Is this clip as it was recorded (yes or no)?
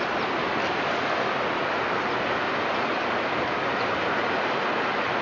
yes